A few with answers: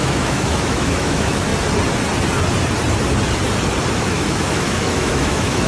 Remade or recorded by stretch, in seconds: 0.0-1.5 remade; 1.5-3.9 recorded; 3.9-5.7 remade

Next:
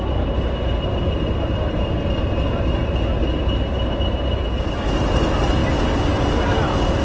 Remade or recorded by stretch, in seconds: 0.0-7.0 recorded

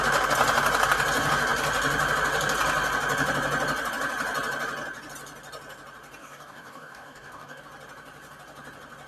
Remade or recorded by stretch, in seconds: 0.0-6.2 recorded; 6.2-7.6 remade; 7.6-9.1 recorded

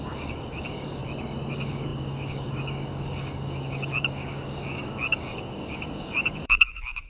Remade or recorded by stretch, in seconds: 0.0-1.0 remade; 1.0-1.5 recorded; 1.5-7.1 remade

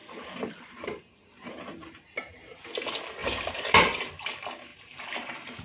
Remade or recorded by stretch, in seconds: 0.0-1.6 remade; 1.6-3.2 recorded; 3.2-4.0 remade; 4.0-4.7 recorded; 4.7-5.6 remade